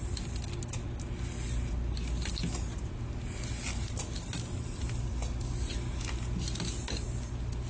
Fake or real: real